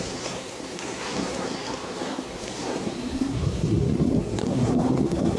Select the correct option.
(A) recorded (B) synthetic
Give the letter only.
B